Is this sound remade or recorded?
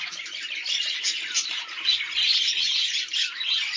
recorded